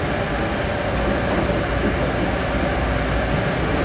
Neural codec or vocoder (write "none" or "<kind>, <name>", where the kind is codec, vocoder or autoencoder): none